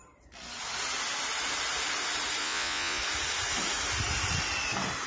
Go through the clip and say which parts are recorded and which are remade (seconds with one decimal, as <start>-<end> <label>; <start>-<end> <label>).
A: 0.0-2.4 recorded; 2.4-3.0 remade; 3.0-5.1 recorded